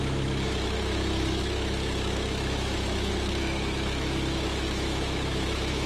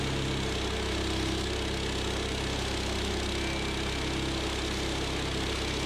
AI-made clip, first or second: first